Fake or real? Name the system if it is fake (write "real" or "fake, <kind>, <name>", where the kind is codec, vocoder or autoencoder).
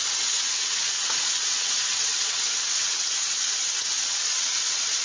fake, vocoder, WaveNeXt